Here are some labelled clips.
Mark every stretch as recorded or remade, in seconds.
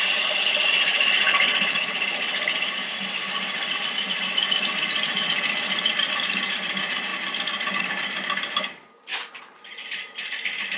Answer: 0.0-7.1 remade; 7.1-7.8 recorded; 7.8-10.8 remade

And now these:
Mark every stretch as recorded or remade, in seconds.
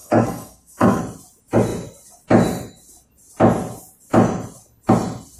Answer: 0.0-1.0 remade; 1.0-5.4 recorded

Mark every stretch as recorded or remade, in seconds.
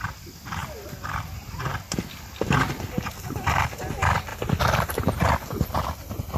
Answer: 0.0-6.4 recorded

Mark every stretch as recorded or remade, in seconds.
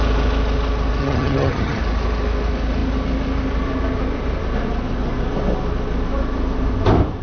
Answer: 0.0-1.0 recorded; 1.0-1.8 remade; 1.8-7.2 recorded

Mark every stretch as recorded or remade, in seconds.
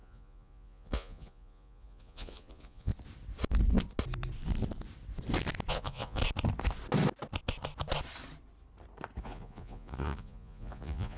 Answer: 0.0-2.9 remade; 2.9-5.7 recorded; 5.7-6.2 remade; 6.2-9.2 recorded; 9.2-11.2 remade